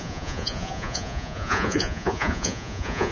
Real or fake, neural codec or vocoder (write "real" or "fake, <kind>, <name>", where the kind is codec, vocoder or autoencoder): fake, vocoder, Vocos